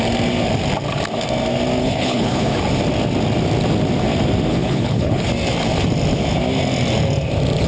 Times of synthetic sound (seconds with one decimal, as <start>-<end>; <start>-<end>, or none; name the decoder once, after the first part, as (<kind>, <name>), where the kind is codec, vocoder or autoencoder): 1.8-2.6 (codec, HILCodec); 4.5-5.3